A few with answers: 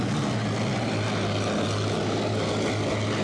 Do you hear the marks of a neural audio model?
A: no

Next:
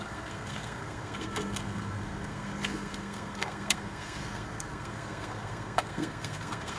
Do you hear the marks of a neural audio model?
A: yes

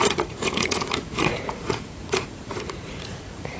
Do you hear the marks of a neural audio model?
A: yes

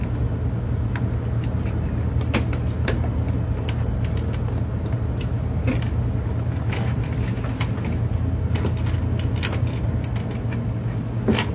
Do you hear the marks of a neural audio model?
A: no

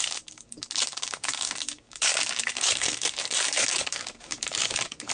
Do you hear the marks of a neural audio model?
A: yes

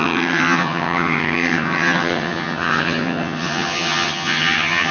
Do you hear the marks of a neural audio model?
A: yes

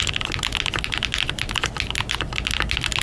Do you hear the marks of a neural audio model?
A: no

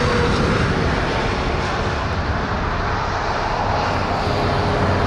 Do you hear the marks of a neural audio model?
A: no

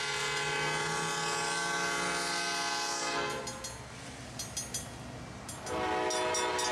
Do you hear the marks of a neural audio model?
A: no